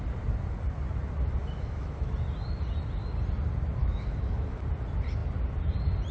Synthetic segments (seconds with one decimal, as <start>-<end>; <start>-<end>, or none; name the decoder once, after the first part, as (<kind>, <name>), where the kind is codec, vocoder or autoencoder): 1.4-2.1 (autoencoder, DAC-VAE); 3.8-4.6